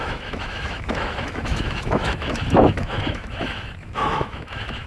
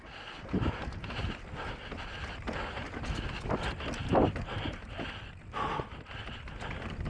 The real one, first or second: second